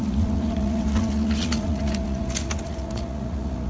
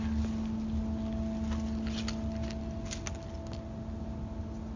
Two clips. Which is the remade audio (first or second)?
first